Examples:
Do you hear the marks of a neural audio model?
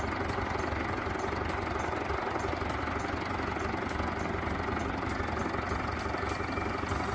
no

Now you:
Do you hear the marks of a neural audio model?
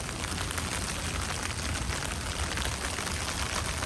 no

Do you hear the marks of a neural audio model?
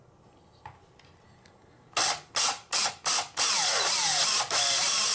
no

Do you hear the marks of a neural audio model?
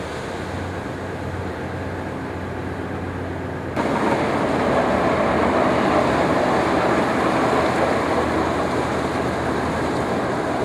no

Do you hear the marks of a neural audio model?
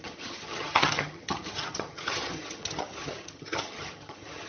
yes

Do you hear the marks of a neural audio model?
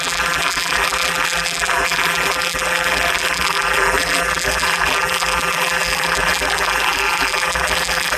yes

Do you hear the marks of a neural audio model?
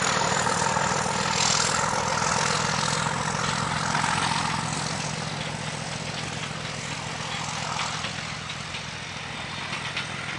no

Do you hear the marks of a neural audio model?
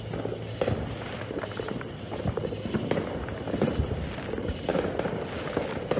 no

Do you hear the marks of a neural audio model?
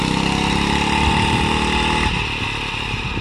no